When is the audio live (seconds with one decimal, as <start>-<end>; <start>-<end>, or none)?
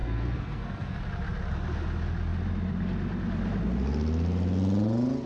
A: 1.0-5.3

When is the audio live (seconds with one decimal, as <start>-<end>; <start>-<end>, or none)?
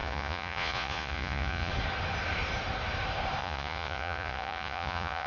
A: 1.7-3.4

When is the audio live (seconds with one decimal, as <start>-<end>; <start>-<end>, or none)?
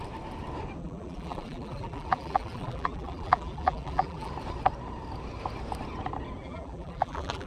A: 0.0-0.8; 4.3-6.4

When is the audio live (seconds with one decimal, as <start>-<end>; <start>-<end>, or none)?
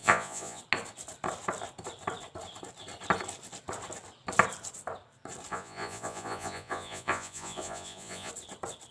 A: 0.6-5.5; 8.3-8.9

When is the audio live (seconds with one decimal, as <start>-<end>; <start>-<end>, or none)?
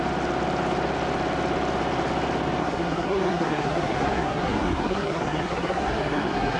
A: 0.0-2.6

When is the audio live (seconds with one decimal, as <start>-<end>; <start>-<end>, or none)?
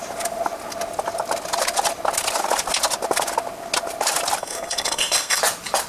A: 0.0-4.4; 5.4-5.9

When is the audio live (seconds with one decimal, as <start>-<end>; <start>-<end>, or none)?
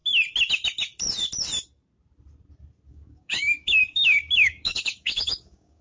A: 0.0-2.9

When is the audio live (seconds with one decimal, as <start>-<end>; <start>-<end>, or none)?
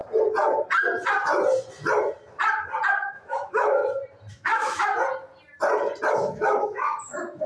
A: 0.0-3.0; 3.8-4.3; 4.9-6.1